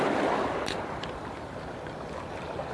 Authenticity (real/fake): real